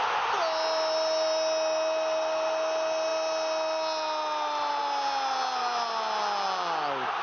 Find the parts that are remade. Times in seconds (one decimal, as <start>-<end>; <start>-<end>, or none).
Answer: none